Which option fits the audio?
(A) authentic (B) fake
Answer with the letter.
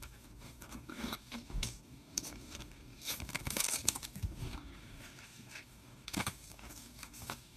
B